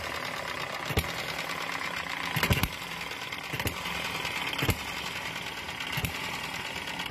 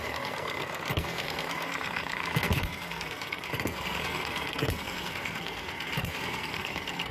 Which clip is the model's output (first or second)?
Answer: second